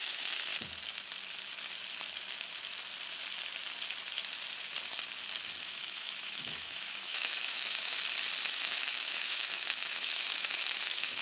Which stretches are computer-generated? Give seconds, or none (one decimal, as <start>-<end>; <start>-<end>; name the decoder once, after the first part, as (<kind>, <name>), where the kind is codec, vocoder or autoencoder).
0.0-0.5 (autoencoder, DAC-VAE); 5.6-7.9; 8.5-11.2